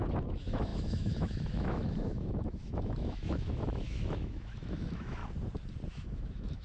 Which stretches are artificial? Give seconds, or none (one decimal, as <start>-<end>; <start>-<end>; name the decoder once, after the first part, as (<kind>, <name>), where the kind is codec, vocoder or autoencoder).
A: 0.0-5.2 (autoencoder, DAC-VAE); 5.9-6.6